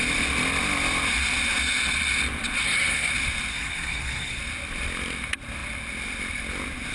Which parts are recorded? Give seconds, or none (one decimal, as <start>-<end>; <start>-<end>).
0.0-2.6; 3.1-3.5; 4.4-6.9